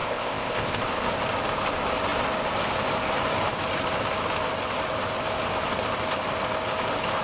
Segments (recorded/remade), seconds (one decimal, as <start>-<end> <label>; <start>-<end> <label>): 0.0-0.8 remade; 0.8-7.2 recorded